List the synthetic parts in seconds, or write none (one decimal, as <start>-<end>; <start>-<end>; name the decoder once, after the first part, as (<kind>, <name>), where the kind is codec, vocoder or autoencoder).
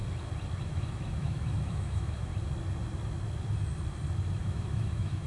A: 0.6-2.3 (autoencoder, DAC-VAE); 4.4-5.3